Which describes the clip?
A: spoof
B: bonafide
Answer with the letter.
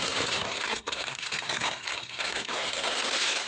A